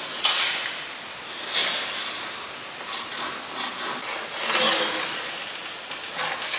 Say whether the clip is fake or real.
real